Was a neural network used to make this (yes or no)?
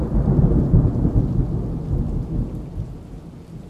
no